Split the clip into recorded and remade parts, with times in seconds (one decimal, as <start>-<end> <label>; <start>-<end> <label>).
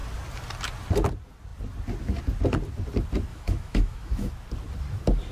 0.0-3.3 recorded; 3.3-4.3 remade; 4.3-5.3 recorded